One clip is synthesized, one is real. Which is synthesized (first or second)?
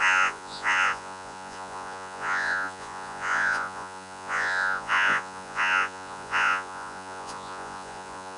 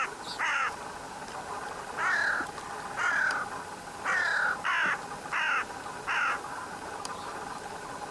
first